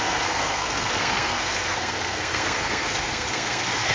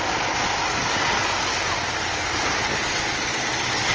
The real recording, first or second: second